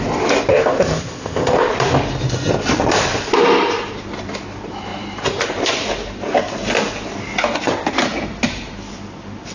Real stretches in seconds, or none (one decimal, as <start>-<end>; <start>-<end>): 0.0-0.5; 1.7-9.5